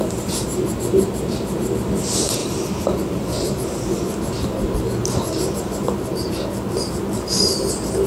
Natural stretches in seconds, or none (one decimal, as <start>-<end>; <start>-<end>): 0.0-8.1